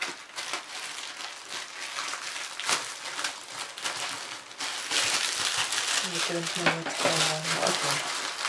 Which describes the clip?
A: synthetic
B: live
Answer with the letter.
B